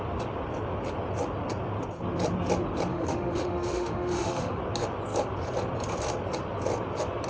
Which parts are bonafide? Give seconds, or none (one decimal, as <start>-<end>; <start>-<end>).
0.0-2.9; 4.6-7.3